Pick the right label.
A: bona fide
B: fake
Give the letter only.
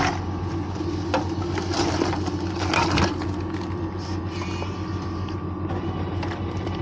A